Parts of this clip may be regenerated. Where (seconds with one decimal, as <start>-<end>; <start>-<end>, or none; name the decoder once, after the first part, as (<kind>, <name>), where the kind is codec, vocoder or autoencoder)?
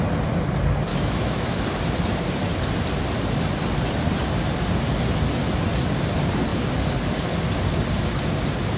0.9-1.6 (autoencoder, DAC-VAE)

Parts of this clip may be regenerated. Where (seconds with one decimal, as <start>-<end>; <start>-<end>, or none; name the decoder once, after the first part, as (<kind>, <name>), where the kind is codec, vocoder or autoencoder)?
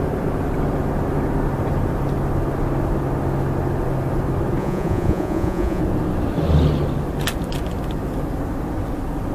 4.6-5.8 (vocoder, Vocos)